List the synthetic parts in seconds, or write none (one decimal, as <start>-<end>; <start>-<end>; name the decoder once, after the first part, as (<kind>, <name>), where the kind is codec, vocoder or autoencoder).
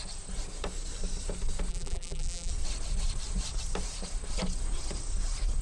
1.7-2.5 (vocoder, BigVGAN v2)